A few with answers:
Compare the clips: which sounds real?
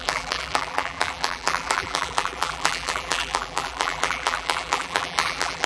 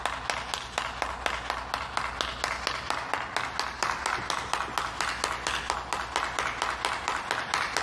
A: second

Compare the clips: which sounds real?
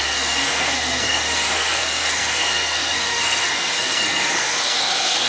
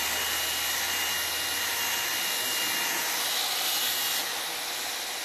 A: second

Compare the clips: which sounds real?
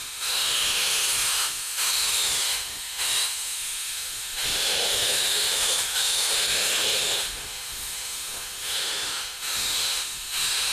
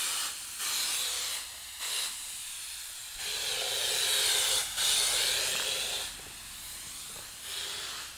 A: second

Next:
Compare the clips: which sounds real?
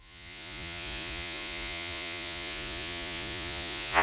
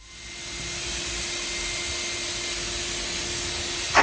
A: second